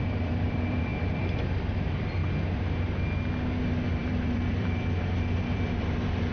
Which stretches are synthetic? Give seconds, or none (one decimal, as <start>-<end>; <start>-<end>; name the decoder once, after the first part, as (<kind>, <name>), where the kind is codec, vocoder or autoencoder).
0.0-2.2 (vocoder, BigVGAN v2); 3.6-6.3

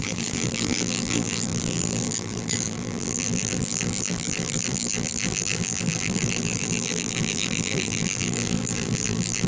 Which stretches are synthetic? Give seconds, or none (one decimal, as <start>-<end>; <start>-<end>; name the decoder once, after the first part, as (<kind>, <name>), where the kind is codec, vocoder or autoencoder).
0.0-9.5 (vocoder, BigVGAN v2)

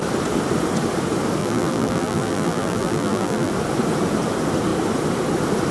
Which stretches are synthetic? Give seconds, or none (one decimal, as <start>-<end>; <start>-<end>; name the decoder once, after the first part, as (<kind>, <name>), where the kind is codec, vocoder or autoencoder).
1.4-3.5 (vocoder, BigVGAN v2)